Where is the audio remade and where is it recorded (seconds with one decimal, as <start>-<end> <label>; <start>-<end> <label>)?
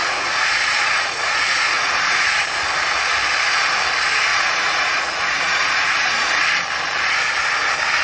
0.0-2.4 remade; 2.4-4.3 recorded; 4.3-6.3 remade; 6.3-8.0 recorded